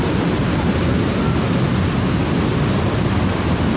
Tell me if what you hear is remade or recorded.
recorded